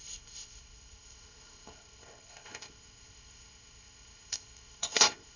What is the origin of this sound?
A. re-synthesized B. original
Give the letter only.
A